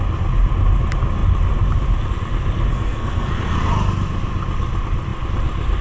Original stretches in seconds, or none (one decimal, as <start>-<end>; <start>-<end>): 0.0-2.7; 3.3-5.8